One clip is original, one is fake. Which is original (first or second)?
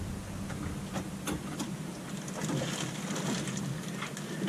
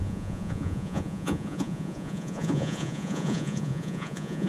first